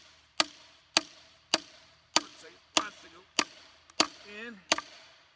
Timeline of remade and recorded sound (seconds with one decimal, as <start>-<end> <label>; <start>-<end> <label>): 0.0-5.4 recorded